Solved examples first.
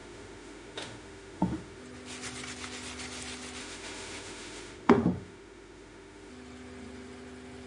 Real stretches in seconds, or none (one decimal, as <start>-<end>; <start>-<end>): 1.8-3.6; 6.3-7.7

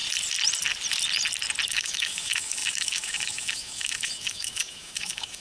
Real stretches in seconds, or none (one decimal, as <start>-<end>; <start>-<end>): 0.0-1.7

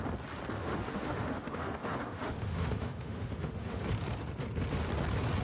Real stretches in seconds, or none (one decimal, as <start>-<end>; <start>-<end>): 0.0-0.6; 3.8-5.4